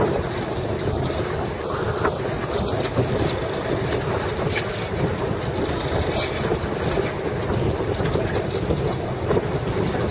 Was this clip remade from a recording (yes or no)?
no